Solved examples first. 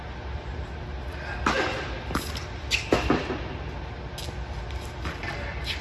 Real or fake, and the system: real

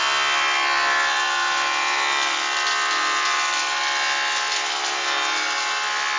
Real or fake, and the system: real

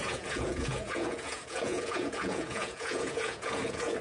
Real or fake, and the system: fake, vocoder, Vocos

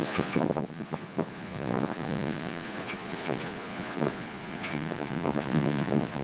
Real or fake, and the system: fake, vocoder, Vocos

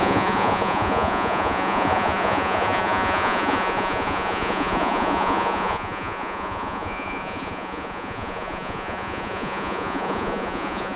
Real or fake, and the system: fake, vocoder, Vocos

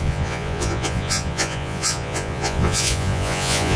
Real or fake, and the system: fake, vocoder, Vocos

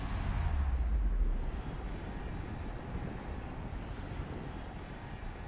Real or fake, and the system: real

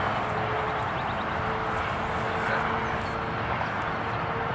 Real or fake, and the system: real